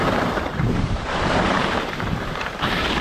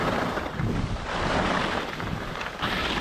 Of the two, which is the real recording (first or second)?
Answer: second